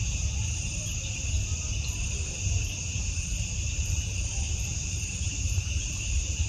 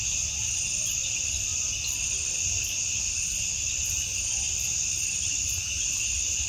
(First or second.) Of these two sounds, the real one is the second